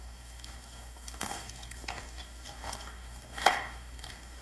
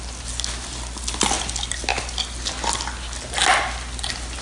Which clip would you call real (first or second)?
second